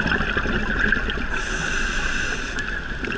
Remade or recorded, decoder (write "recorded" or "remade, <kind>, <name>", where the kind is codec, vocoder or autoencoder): recorded